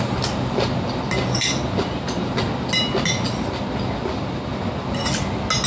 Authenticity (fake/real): real